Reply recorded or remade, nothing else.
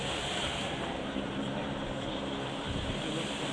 remade